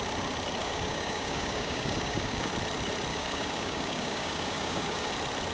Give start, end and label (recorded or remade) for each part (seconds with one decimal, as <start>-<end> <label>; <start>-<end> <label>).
0.0-0.6 recorded; 0.6-2.5 remade; 2.5-3.1 recorded; 3.1-5.1 remade; 5.1-5.5 recorded